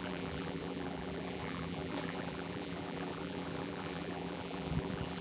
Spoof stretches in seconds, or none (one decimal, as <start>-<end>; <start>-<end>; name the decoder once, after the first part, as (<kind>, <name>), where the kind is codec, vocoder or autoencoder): 0.0-5.2 (vocoder, BigVGAN v2)